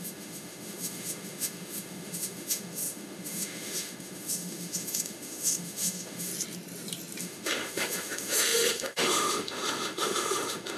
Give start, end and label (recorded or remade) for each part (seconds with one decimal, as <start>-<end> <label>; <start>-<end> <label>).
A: 0.0-6.3 remade; 6.3-7.2 recorded; 7.2-10.8 remade